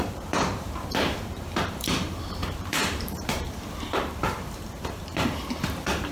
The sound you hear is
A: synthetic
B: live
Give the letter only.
A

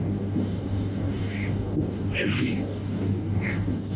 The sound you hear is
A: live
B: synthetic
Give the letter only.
B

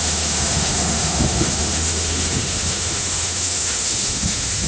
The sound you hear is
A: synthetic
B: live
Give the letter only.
A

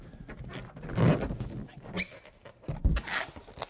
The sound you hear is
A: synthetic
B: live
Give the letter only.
B